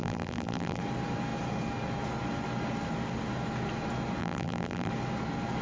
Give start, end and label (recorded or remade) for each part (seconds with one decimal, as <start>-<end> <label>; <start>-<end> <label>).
0.0-0.8 remade; 0.8-4.2 recorded; 4.2-4.9 remade; 4.9-5.6 recorded